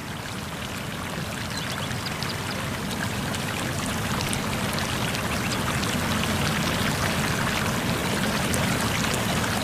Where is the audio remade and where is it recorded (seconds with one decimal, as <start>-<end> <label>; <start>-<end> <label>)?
0.0-4.4 remade; 4.4-8.0 recorded; 8.0-8.9 remade; 8.9-9.6 recorded